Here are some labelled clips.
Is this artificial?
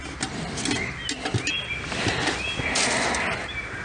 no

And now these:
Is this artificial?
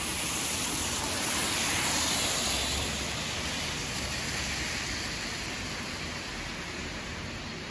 no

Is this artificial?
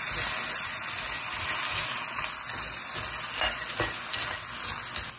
no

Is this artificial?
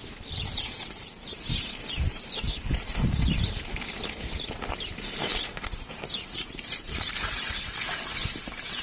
yes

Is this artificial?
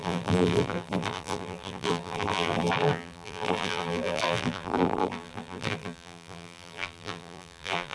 yes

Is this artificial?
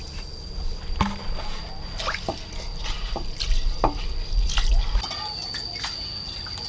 no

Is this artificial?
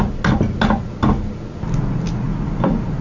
no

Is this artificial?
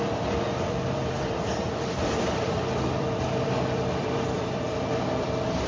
yes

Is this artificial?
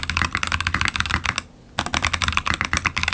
no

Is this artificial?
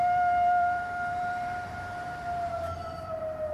yes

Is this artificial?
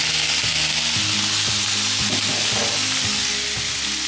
no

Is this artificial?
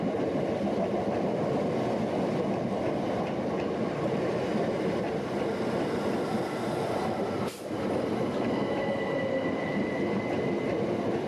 no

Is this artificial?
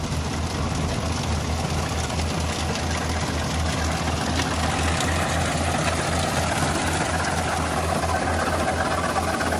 no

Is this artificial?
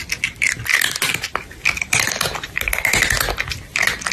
no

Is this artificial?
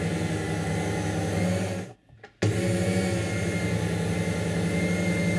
no